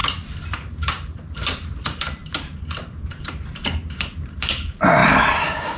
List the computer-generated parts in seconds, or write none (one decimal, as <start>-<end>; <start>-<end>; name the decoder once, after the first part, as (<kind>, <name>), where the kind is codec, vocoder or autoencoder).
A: 0.5-5.8 (vocoder, BigVGAN v2)